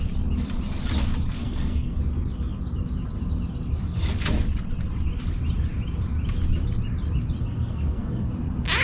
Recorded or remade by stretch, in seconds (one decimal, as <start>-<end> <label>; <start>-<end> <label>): 0.0-1.4 recorded; 1.4-2.0 remade; 2.0-7.4 recorded; 7.4-8.3 remade; 8.3-8.8 recorded